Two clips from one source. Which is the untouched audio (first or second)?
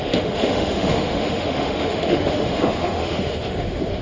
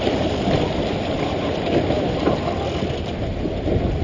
second